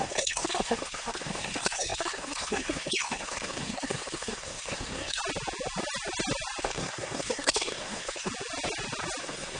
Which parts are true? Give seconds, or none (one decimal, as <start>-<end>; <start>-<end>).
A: 5.2-6.6; 8.3-9.2